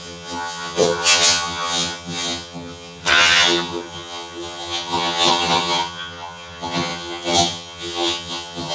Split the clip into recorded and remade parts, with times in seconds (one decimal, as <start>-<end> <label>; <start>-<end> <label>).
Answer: 0.0-8.7 remade